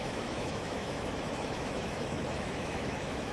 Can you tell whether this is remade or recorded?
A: remade